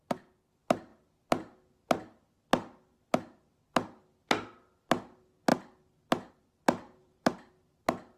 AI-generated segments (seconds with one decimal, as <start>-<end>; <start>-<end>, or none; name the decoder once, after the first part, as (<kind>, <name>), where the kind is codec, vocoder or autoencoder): 7.0-7.5 (vocoder, BigVGAN v2)